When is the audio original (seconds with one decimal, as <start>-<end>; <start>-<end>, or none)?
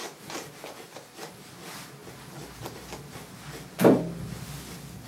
0.7-5.1